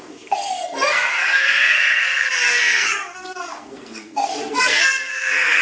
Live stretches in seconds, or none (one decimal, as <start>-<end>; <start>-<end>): none